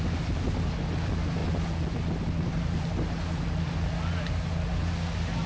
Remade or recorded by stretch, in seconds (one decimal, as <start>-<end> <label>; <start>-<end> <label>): 0.0-5.5 recorded